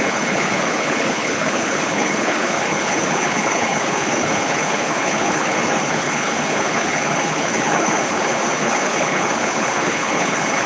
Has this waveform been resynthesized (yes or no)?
yes